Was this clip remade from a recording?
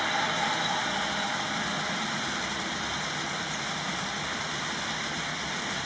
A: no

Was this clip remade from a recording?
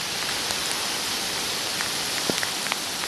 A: no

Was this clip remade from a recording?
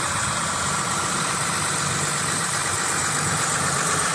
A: yes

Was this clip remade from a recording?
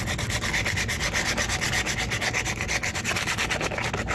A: no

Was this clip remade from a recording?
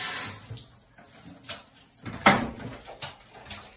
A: no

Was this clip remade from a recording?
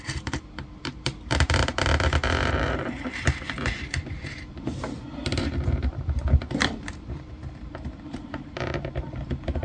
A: yes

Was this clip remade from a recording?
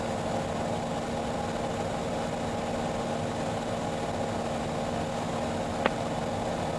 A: no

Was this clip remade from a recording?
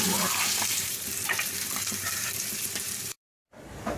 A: yes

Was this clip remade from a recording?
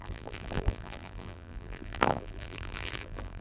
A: yes